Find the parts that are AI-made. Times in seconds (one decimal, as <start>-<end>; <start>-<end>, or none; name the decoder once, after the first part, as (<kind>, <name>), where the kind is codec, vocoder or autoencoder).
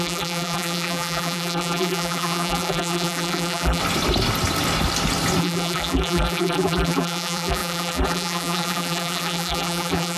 0.0-3.8 (vocoder, BigVGAN v2); 5.4-10.2